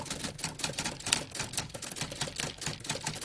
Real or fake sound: real